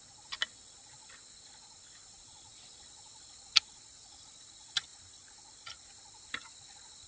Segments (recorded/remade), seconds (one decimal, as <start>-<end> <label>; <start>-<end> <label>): 0.0-7.1 recorded